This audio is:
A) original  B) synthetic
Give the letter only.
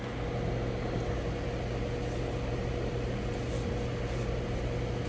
A